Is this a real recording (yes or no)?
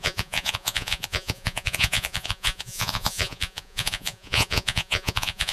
no